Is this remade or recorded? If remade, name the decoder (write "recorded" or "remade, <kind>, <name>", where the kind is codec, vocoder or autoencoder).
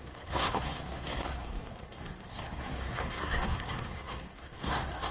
remade, codec, SNAC